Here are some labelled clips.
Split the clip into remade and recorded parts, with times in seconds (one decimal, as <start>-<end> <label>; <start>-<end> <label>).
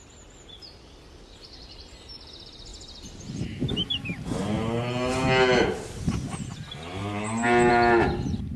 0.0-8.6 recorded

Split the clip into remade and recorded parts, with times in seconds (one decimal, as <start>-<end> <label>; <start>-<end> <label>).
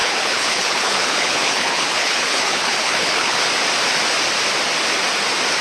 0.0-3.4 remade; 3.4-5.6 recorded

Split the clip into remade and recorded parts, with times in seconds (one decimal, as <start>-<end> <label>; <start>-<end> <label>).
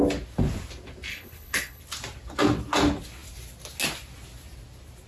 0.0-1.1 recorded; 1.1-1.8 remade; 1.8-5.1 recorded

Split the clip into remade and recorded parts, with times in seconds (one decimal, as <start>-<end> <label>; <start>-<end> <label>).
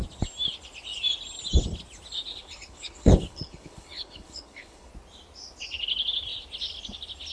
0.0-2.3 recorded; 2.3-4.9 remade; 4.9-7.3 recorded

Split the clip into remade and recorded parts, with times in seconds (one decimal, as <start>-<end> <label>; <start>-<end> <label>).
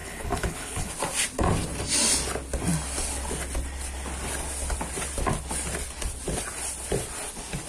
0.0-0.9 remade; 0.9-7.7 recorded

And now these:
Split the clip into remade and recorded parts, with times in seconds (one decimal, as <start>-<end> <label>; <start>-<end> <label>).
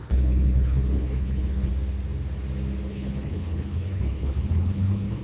0.0-1.7 remade; 1.7-2.9 recorded; 2.9-5.2 remade